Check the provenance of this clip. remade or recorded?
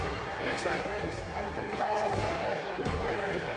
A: remade